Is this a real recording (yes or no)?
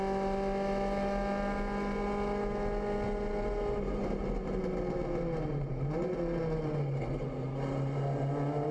yes